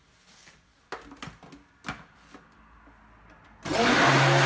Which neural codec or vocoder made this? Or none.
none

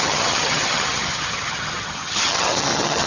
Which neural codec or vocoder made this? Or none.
vocoder, HiFi-GAN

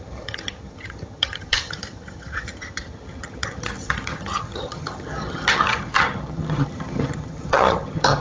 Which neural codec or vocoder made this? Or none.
vocoder, HiFi-GAN